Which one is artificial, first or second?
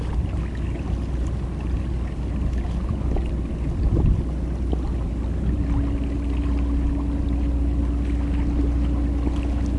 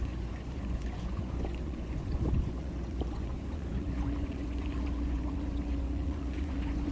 second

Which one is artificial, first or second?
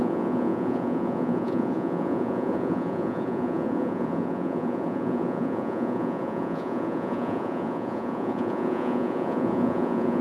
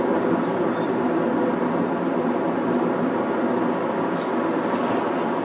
first